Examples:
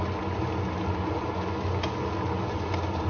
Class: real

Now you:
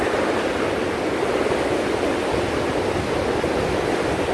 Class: real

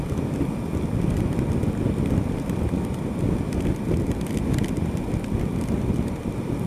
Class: real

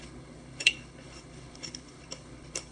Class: fake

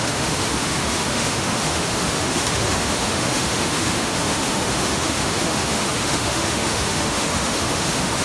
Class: fake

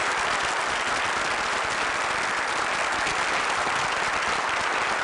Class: real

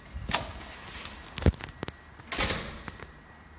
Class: real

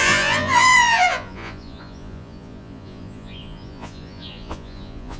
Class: fake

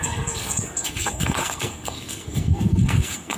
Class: fake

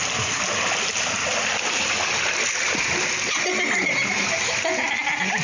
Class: real